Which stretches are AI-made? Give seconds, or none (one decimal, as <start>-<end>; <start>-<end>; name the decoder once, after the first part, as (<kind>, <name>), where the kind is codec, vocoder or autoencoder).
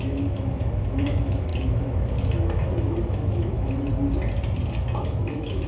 0.0-3.9 (autoencoder, DAC-VAE); 4.7-5.7